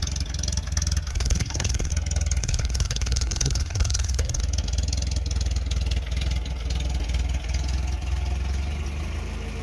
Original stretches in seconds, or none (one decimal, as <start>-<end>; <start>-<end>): 0.0-1.1; 1.9-2.4; 4.4-9.6